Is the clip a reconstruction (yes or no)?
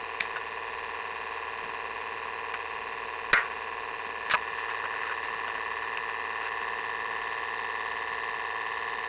no